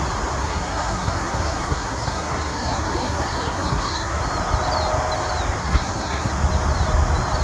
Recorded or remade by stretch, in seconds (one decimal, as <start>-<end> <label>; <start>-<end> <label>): 0.0-0.4 recorded; 0.4-4.2 remade; 4.2-5.6 recorded; 5.6-6.3 remade; 6.3-7.4 recorded